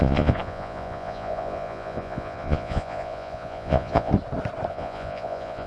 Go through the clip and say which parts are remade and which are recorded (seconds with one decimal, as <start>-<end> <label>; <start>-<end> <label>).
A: 0.0-4.1 remade; 4.1-4.7 recorded; 4.7-5.7 remade

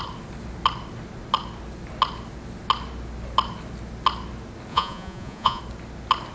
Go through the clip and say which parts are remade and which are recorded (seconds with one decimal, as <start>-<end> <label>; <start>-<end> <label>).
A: 0.0-4.7 recorded; 4.7-5.6 remade; 5.6-6.3 recorded